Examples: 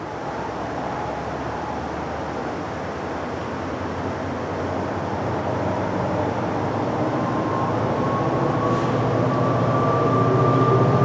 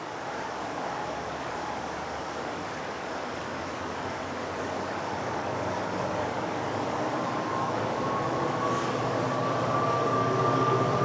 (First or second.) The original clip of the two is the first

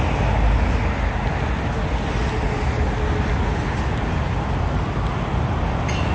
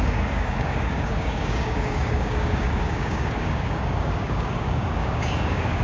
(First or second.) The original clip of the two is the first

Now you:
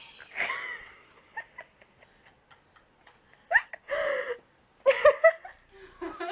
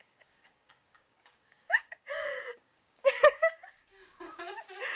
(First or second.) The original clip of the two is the first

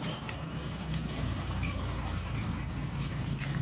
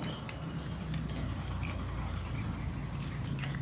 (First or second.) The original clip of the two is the second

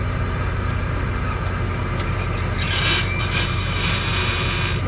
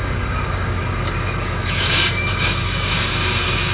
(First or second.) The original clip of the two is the first